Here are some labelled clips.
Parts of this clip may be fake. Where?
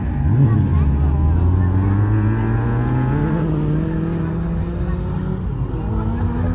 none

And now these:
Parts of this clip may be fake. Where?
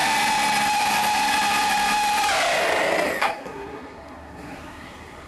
3.2-5.3 (codec, SNAC)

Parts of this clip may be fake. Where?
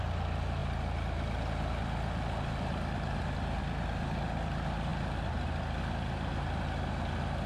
none